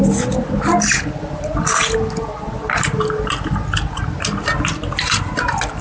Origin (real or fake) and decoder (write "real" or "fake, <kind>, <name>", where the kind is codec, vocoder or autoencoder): real